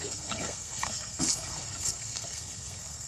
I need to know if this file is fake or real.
fake